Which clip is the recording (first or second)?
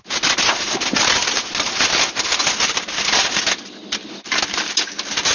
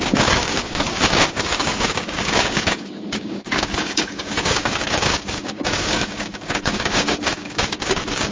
first